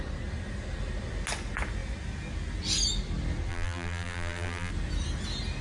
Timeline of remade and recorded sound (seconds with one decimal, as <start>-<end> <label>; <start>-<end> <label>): 0.0-3.5 recorded; 3.5-4.7 remade; 4.7-5.6 recorded